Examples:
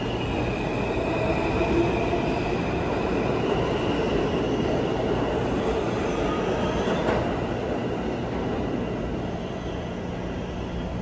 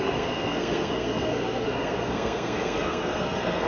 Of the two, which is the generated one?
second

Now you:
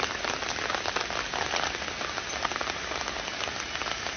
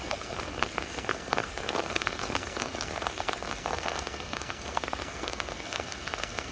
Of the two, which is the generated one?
second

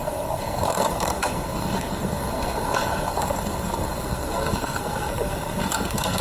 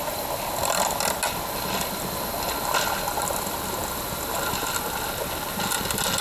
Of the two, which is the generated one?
first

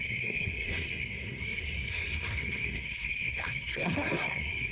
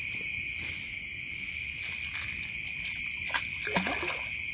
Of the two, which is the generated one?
first